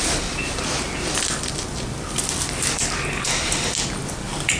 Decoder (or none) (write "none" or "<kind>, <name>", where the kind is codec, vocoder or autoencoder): none